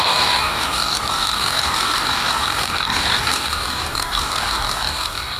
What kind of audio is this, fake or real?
fake